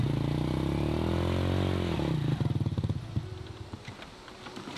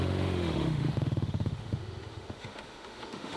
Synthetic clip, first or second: second